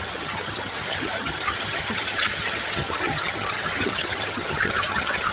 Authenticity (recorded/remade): remade